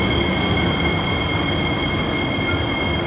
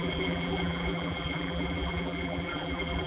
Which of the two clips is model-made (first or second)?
second